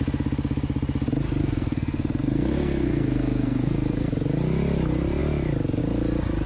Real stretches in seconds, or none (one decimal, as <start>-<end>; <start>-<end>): 0.0-1.4; 4.1-6.5